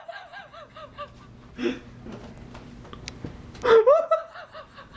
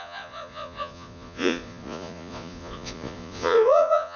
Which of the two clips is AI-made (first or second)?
second